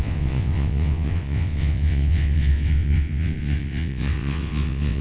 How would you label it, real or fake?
fake